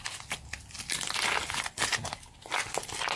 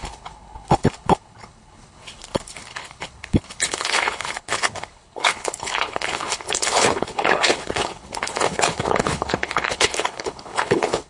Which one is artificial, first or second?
second